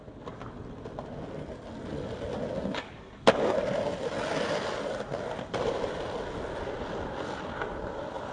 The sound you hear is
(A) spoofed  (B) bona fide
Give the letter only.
B